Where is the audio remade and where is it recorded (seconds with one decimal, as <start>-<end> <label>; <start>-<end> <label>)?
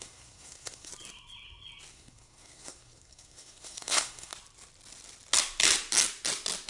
0.0-0.9 remade; 0.9-1.9 recorded; 1.9-4.3 remade; 4.3-6.7 recorded